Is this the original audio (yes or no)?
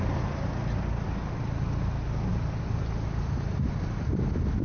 yes